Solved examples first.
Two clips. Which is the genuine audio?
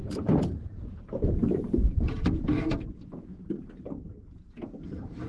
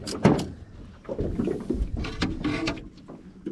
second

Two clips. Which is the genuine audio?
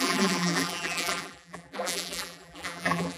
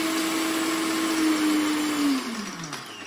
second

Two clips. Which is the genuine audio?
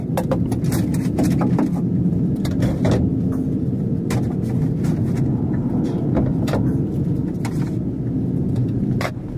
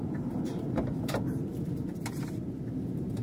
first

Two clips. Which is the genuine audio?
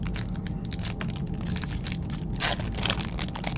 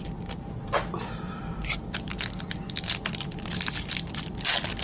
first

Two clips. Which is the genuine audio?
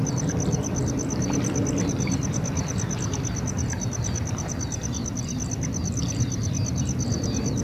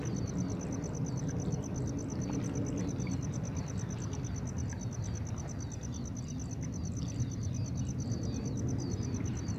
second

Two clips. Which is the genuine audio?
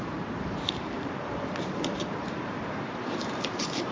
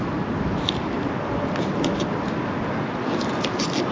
second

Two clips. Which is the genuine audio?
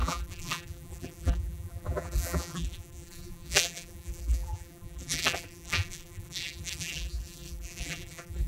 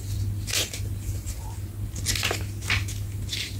second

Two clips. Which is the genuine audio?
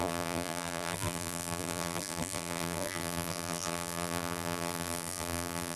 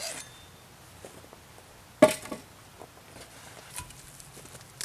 second